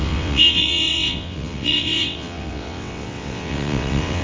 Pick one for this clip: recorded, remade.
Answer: remade